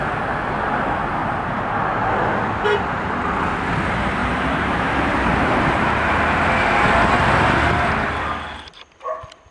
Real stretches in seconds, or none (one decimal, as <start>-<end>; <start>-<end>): 0.0-1.2; 1.8-4.2; 5.9-9.5